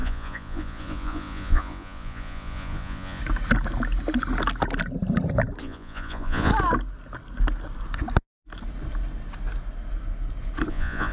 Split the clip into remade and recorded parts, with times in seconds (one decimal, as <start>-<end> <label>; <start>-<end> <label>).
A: 0.0-3.2 remade; 3.2-5.6 recorded; 5.6-6.5 remade; 6.5-10.7 recorded; 10.7-11.1 remade